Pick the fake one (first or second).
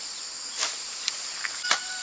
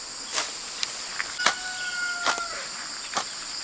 first